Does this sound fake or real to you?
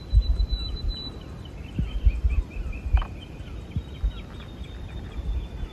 fake